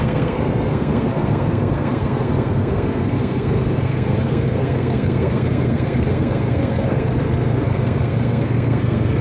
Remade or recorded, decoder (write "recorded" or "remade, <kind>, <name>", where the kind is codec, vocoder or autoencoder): remade, codec, SNAC